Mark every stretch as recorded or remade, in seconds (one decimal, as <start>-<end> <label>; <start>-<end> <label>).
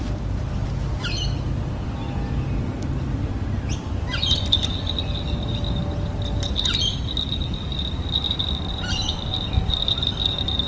0.0-10.7 recorded